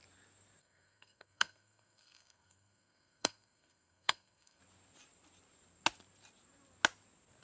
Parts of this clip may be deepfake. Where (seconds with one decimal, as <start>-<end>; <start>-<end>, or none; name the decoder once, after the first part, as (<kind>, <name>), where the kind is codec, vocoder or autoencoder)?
0.6-4.6 (codec, SNAC)